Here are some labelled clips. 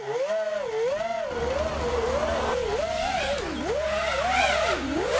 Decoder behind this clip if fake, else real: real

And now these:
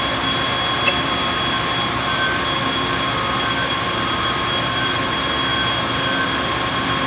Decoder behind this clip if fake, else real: real